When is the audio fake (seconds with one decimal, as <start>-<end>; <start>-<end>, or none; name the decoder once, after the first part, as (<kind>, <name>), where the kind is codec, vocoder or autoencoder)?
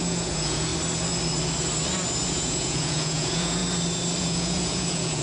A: 0.0-0.7 (vocoder, Vocos); 2.3-3.6; 4.2-5.2